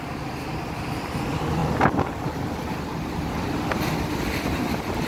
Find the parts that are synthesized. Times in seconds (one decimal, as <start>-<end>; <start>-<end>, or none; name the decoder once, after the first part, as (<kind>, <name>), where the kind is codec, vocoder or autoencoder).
none